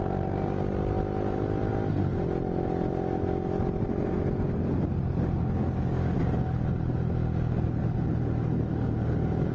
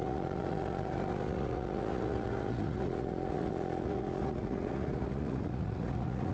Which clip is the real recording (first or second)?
first